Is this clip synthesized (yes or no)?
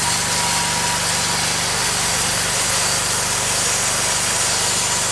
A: no